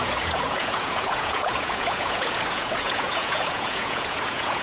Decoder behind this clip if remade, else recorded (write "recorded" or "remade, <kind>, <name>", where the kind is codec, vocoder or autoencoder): remade, vocoder, Vocos